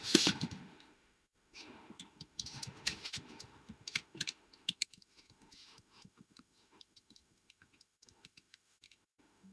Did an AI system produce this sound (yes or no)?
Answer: yes